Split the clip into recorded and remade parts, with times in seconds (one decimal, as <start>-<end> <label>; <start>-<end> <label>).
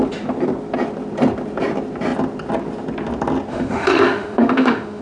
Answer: 0.0-3.5 recorded; 3.5-5.0 remade